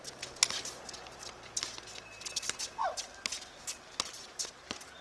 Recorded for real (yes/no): yes